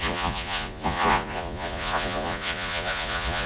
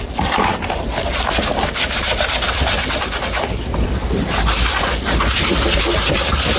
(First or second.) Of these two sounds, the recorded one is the second